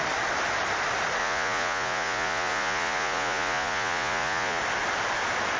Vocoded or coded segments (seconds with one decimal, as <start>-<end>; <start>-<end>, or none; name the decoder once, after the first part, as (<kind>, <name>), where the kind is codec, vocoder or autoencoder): 1.2-4.6 (vocoder, Vocos)